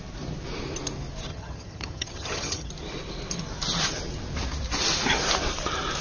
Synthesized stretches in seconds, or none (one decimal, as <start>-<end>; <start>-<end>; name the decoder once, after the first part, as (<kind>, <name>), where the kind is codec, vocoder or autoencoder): 1.3-2.7 (vocoder, HiFi-GAN)